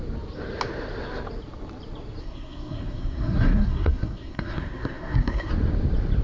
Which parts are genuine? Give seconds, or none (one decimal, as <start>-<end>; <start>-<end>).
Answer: 0.0-2.2; 5.5-6.2